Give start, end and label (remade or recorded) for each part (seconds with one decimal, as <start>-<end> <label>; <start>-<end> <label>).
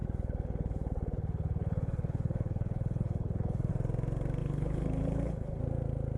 0.0-3.7 remade; 3.7-4.4 recorded; 4.4-5.6 remade; 5.6-6.2 recorded